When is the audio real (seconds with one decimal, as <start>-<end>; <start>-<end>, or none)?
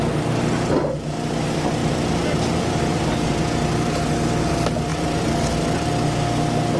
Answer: 0.0-1.8; 3.0-4.9; 5.5-6.8